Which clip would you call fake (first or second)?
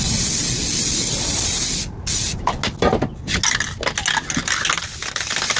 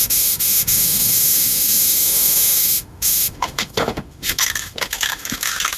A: second